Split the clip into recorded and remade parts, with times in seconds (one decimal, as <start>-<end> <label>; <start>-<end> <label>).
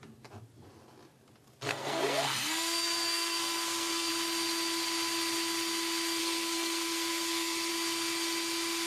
0.0-1.7 recorded; 1.7-4.1 remade; 4.1-6.2 recorded; 6.2-7.7 remade; 7.7-8.9 recorded